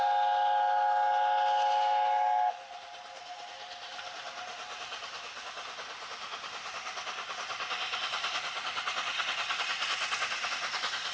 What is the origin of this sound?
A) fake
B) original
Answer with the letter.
B